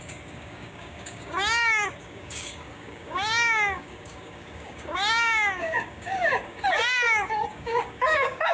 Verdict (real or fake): fake